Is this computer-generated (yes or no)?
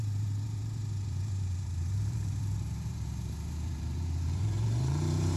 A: yes